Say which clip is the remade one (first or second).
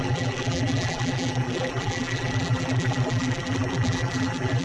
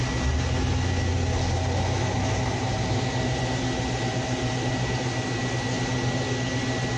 first